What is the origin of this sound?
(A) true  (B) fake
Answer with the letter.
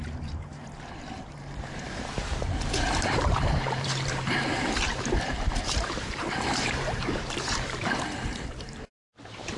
B